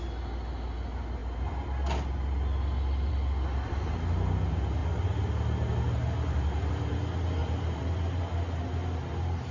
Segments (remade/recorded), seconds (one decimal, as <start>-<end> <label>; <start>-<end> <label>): 0.0-9.5 recorded